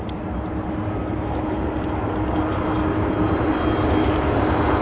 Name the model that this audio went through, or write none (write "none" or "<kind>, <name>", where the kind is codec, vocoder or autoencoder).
none